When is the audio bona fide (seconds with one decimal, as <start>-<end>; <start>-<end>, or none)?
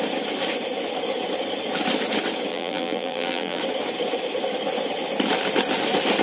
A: 0.0-2.5; 3.6-6.2